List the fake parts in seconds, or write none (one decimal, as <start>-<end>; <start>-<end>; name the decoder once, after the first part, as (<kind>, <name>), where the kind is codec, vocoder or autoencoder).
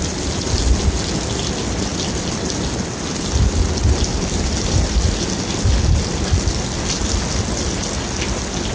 none